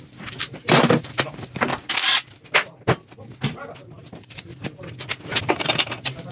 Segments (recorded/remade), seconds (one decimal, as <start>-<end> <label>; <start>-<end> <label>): 0.0-1.7 remade; 1.7-4.0 recorded; 4.0-4.5 remade; 4.5-5.5 recorded; 5.5-6.3 remade